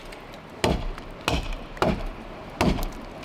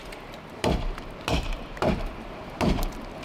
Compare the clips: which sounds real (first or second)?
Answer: first